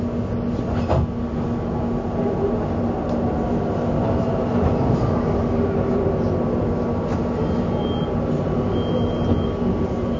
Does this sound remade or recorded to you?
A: recorded